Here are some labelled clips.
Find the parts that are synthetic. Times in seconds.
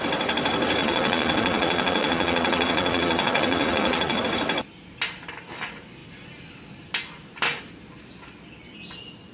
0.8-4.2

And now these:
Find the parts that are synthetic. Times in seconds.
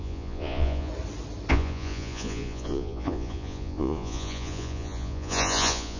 0.0-0.9; 1.5-6.0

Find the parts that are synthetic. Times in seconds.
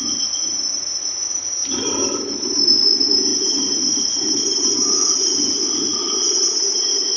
0.0-0.5; 3.3-4.1; 4.9-6.4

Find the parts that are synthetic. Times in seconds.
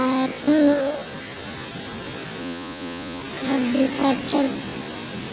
2.4-3.2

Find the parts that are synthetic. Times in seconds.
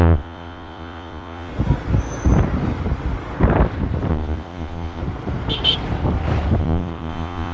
0.0-1.5; 4.1-5.0; 6.6-7.5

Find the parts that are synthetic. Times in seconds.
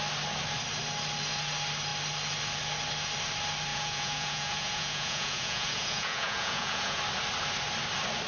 3.7-7.0